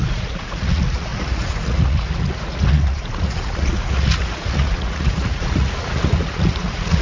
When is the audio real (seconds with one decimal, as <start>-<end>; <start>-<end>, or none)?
none

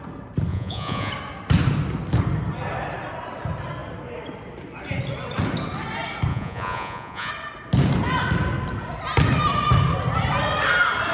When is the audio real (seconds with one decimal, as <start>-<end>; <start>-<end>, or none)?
0.0-0.5; 1.1-6.3; 7.3-11.1